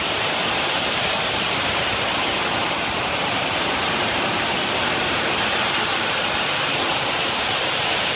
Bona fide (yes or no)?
no